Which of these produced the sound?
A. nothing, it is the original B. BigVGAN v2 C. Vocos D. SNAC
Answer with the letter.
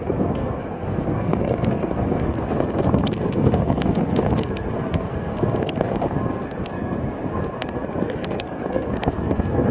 D